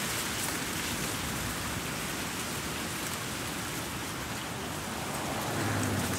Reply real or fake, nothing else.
real